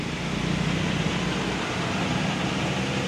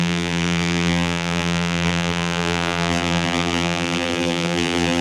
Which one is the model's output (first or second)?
second